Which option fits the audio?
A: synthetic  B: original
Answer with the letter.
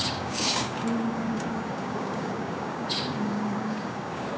A